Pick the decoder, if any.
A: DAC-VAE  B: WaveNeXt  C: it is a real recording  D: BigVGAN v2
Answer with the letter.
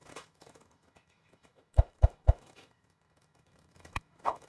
A